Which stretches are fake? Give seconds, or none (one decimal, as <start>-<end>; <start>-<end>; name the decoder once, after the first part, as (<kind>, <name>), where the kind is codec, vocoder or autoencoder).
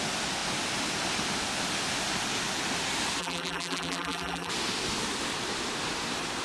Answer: 3.2-4.5 (vocoder, BigVGAN v2)